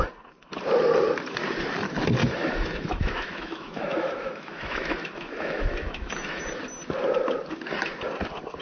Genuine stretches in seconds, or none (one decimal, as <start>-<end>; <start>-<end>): 0.0-2.2; 6.4-8.6